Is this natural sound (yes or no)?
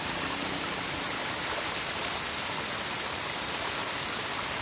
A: yes